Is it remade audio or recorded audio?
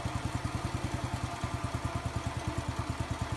recorded